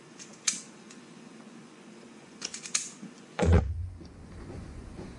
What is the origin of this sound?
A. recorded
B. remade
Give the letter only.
B